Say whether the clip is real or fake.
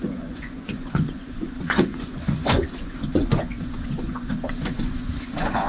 fake